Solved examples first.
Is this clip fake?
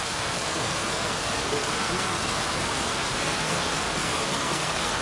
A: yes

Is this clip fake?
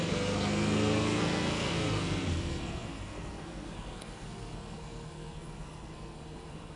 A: yes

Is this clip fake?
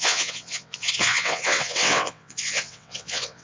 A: yes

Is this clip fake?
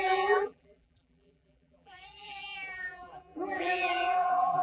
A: yes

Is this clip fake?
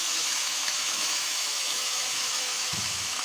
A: yes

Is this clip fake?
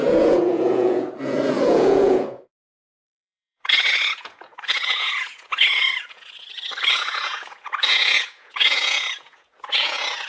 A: yes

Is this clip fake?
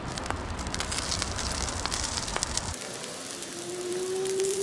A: yes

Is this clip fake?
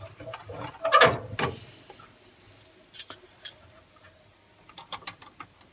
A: no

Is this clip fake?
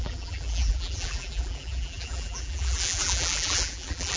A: yes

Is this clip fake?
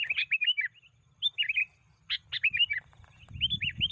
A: no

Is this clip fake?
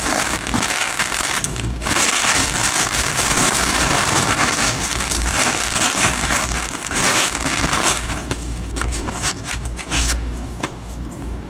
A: yes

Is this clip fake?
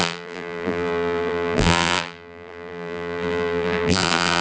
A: yes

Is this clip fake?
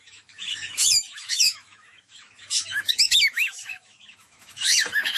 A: yes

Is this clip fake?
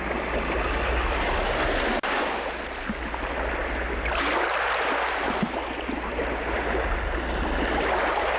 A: no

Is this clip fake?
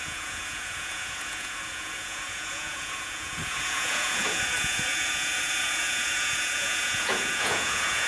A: yes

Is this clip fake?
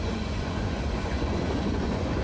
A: yes